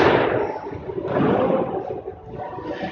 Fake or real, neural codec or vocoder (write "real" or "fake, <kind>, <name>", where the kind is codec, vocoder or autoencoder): real